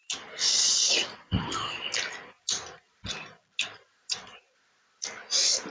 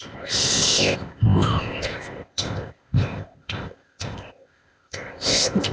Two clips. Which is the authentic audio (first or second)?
first